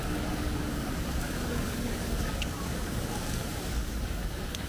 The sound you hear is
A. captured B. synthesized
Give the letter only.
B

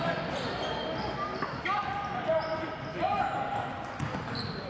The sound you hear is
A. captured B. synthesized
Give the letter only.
A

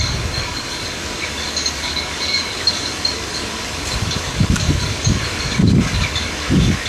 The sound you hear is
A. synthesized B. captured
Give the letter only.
A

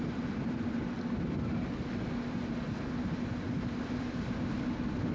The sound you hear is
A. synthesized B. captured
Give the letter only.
B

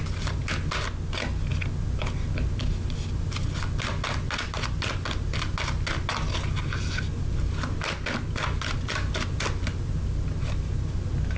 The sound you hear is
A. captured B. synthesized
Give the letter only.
A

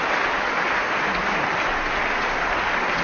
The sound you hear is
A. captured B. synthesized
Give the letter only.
A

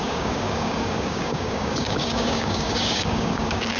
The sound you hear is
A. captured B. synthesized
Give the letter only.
B